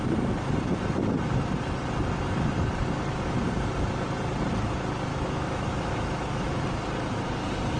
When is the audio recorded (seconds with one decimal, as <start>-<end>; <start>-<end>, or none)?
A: 0.0-5.1; 6.6-7.8